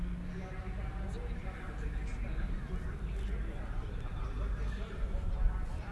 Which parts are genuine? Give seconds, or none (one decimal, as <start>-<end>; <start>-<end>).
0.0-5.9